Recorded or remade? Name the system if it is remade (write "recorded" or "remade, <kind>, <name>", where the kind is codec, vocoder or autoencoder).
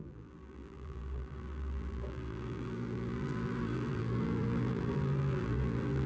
remade, vocoder, BigVGAN v2